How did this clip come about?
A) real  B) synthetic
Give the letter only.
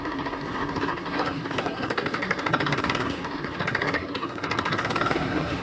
B